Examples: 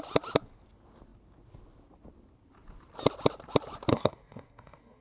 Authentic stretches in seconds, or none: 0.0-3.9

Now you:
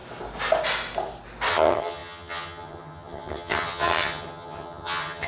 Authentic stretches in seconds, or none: 0.0-1.5

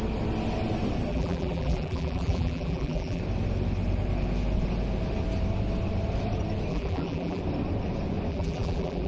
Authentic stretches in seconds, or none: 0.0-1.1; 3.2-6.7; 7.4-8.3

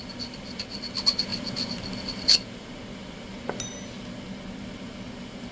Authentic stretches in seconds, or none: 0.0-5.5

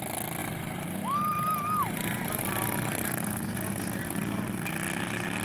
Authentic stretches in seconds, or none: 0.0-5.4

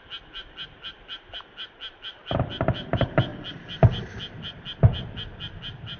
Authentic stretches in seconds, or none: 0.0-6.0

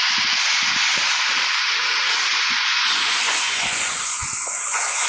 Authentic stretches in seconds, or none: 0.0-2.3

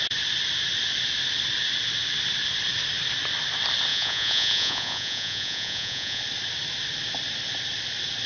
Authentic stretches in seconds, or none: 0.0-3.9; 6.2-8.3